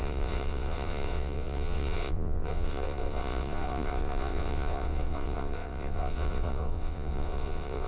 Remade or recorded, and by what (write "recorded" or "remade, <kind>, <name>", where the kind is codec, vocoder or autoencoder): remade, vocoder, WaveNeXt